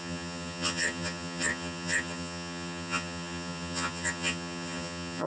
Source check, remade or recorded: remade